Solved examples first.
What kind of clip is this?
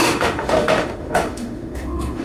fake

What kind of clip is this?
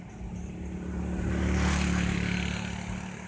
real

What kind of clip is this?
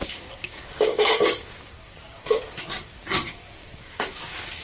fake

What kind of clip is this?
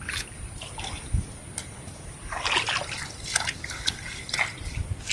real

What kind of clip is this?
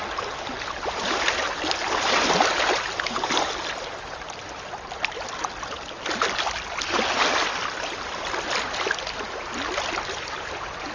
real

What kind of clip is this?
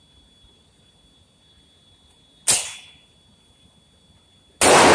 real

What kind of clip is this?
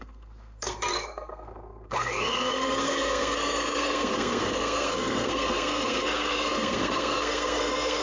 fake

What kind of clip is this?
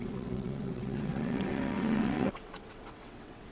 fake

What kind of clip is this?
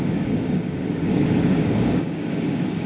fake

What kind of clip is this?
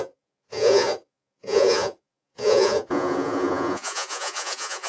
fake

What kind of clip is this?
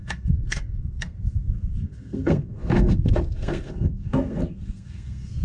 fake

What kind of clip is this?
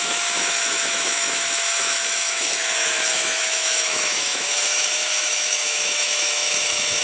fake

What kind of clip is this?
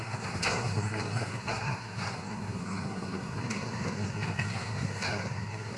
fake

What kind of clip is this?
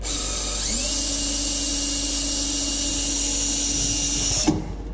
real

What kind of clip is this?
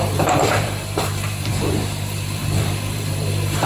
fake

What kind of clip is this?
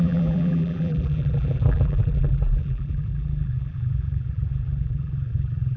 fake